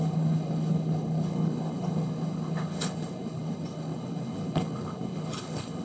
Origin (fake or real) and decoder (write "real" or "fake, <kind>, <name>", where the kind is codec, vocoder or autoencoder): fake, codec, HILCodec